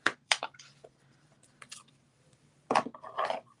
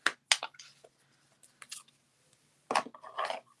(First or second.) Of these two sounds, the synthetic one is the first